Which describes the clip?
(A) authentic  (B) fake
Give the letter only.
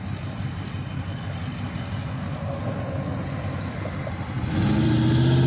A